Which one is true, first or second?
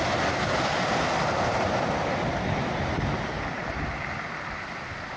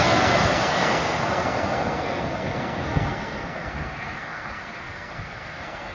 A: first